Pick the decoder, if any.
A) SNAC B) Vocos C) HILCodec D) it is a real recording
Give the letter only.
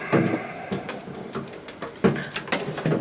D